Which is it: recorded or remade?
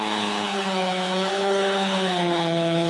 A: remade